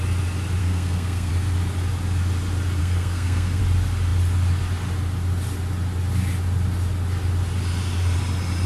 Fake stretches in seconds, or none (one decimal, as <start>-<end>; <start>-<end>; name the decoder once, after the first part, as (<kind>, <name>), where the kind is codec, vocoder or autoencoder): 0.6-1.3 (codec, SNAC); 2.8-3.6